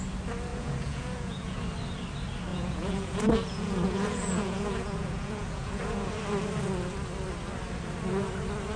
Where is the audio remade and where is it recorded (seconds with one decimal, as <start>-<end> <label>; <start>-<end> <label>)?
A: 0.0-0.5 recorded; 0.5-1.6 remade; 1.6-2.5 recorded; 2.5-6.1 remade; 6.1-8.8 recorded

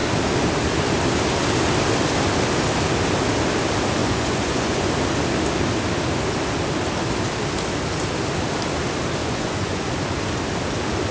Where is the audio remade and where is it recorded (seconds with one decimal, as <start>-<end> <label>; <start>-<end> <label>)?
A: 0.0-4.0 recorded; 4.0-4.9 remade; 4.9-9.2 recorded; 9.2-9.9 remade; 9.9-11.1 recorded

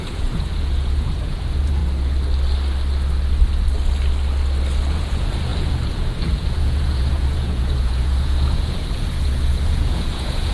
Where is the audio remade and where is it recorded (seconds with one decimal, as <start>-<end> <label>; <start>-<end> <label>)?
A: 0.0-1.8 remade; 1.8-4.9 recorded; 4.9-10.5 remade

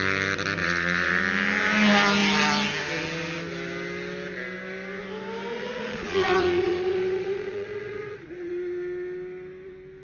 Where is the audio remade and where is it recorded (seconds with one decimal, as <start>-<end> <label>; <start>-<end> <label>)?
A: 0.0-0.6 recorded; 0.6-1.2 remade; 1.2-5.5 recorded; 5.5-8.5 remade; 8.5-10.0 recorded

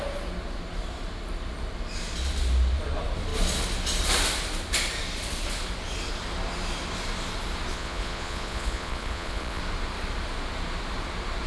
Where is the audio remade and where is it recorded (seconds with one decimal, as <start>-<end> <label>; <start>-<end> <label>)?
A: 0.0-7.7 recorded; 7.7-9.6 remade; 9.6-11.5 recorded

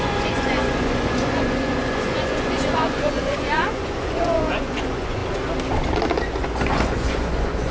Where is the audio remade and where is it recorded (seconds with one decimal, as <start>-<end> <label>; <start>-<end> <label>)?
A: 0.0-5.2 remade; 5.2-6.2 recorded; 6.2-7.7 remade

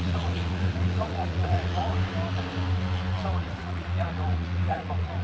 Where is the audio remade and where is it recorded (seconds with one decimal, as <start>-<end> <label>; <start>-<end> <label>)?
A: 0.0-1.9 remade; 1.9-3.3 recorded; 3.3-5.2 remade